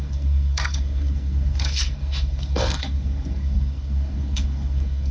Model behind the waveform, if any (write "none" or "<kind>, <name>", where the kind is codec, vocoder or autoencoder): codec, SNAC